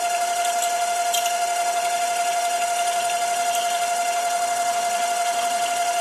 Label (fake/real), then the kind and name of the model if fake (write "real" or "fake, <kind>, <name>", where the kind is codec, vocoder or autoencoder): real